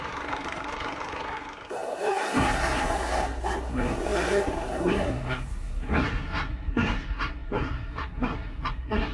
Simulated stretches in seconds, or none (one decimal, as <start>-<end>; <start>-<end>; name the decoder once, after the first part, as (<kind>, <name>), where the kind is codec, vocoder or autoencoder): 0.0-9.1 (codec, SNAC)